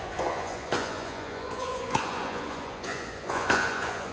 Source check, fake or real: fake